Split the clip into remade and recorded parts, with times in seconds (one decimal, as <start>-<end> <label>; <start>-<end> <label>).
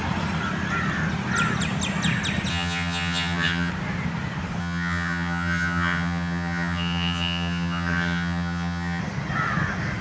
0.0-2.5 recorded; 2.5-3.7 remade; 3.7-4.6 recorded; 4.6-9.0 remade; 9.0-10.0 recorded